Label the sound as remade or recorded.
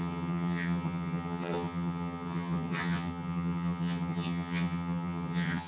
remade